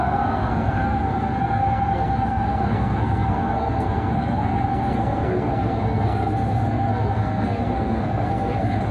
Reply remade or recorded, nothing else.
remade